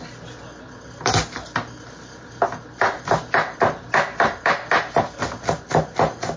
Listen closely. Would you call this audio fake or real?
real